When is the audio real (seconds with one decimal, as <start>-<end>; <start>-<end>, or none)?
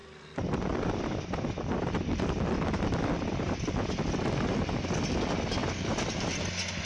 3.9-5.6; 6.5-6.9